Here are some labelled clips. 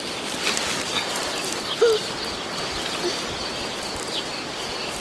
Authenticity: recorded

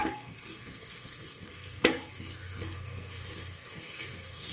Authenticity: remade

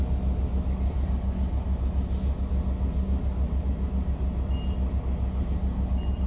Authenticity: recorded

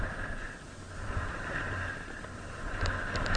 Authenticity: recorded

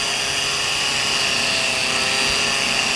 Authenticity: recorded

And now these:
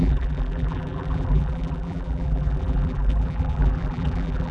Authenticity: remade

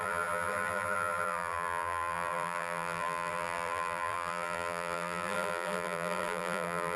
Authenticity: remade